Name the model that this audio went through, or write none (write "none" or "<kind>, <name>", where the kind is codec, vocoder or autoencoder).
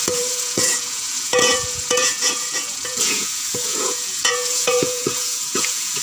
vocoder, Vocos